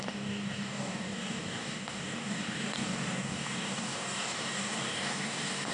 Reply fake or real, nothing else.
fake